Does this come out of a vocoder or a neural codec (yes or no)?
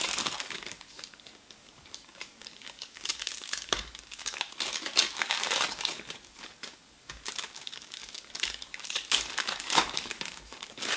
yes